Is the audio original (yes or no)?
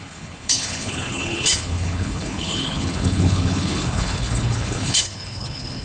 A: no